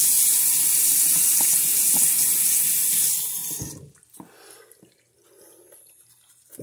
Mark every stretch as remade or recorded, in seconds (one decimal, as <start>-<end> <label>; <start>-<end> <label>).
0.0-6.6 recorded